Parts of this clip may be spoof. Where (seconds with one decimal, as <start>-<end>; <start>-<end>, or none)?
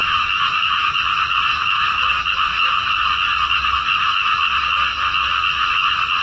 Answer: 0.0-1.0; 1.5-2.0; 2.5-3.0